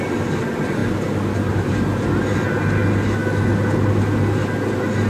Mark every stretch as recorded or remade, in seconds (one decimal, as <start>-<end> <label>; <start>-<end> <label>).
0.0-5.1 recorded